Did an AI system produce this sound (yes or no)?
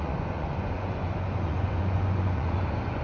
yes